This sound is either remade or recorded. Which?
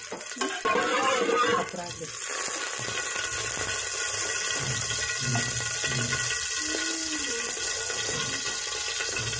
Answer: recorded